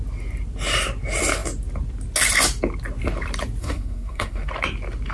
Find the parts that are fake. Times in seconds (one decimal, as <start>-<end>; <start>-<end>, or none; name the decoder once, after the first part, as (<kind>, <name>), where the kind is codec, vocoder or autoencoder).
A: 3.6-4.5 (codec, SNAC)